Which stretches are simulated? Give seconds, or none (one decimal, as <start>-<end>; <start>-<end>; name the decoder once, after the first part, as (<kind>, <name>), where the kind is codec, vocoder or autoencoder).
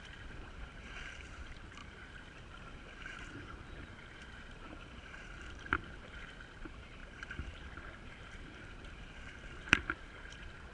0.0-10.7 (vocoder, BigVGAN v2)